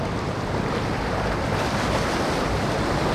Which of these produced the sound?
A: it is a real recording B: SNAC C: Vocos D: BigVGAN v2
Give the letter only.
A